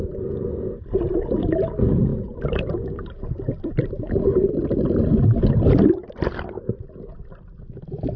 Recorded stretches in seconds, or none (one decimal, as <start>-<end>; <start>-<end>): 0.0-8.2